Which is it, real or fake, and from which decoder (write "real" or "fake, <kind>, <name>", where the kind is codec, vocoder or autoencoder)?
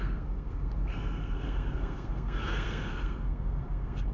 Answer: fake, codec, SNAC